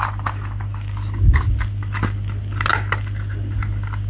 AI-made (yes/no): no